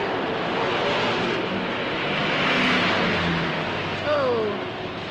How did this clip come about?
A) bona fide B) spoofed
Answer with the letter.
A